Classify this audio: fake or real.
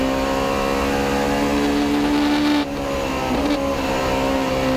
real